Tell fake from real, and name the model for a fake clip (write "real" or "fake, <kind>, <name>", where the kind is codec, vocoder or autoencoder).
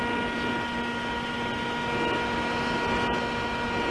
real